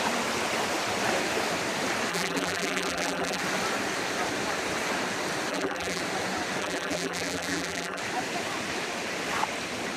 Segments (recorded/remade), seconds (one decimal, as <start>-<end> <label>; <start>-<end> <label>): 0.0-2.1 recorded; 2.1-3.4 remade; 3.4-5.5 recorded; 5.5-6.0 remade; 6.0-6.6 recorded; 6.6-8.0 remade; 8.0-10.0 recorded